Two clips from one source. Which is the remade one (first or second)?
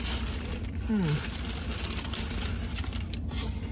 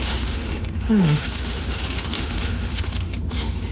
second